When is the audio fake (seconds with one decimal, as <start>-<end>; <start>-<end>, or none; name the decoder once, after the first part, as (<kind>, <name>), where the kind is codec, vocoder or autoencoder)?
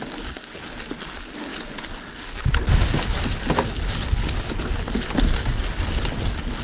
none